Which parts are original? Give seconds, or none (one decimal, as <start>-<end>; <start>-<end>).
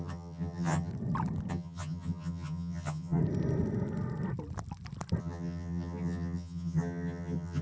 0.9-1.5; 3.2-5.2